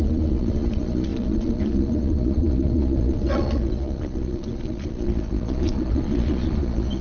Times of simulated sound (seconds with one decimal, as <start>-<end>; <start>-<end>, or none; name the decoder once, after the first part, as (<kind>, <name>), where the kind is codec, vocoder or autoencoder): 0.0-7.0 (vocoder, Vocos)